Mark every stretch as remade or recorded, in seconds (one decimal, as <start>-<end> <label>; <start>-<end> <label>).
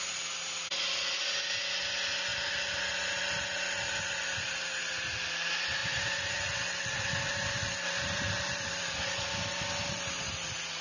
0.0-5.8 recorded; 5.8-9.0 remade; 9.0-10.8 recorded